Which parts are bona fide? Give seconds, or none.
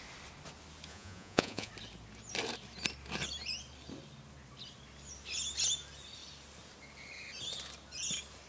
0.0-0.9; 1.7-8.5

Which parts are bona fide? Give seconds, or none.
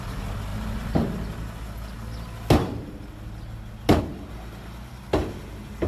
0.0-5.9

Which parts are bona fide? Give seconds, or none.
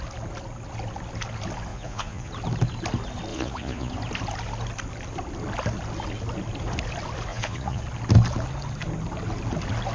0.0-1.7; 2.3-3.3; 3.9-7.3; 7.8-9.9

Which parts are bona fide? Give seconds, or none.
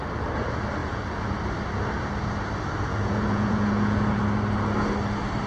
0.0-0.8; 1.4-2.9; 4.2-5.5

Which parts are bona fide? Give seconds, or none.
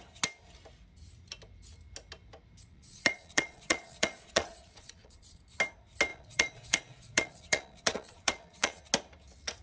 0.0-2.7; 5.4-6.1; 8.8-9.6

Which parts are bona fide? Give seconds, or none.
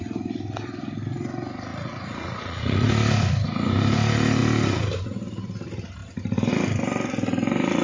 0.0-1.7; 2.9-7.8